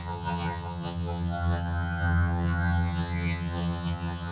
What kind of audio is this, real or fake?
fake